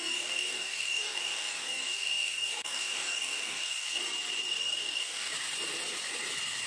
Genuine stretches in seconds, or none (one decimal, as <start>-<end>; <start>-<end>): 4.0-4.5; 5.3-6.7